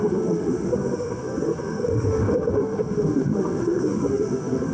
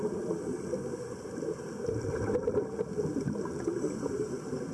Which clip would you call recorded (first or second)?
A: second